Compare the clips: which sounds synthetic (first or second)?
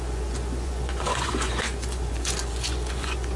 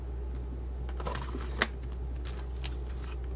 first